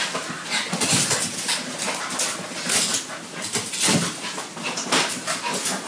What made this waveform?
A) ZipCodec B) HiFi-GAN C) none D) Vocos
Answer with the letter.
C